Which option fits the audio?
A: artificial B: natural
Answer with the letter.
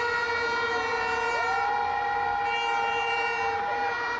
B